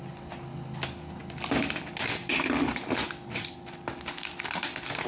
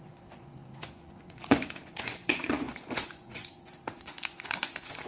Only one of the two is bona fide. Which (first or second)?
first